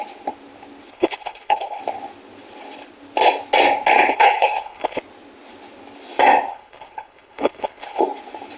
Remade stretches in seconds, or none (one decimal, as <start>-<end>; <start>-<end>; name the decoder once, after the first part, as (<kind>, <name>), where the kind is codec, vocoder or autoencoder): 0.9-1.8 (codec, HILCodec); 4.1-5.0; 6.5-8.0